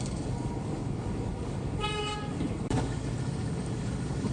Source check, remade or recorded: remade